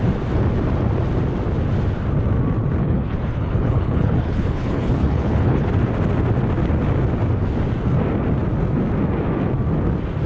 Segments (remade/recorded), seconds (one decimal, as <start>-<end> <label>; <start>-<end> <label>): 0.0-2.8 recorded; 2.8-5.7 remade; 5.7-10.3 recorded